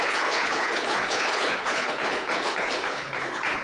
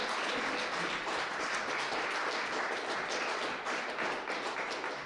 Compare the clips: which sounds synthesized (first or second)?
first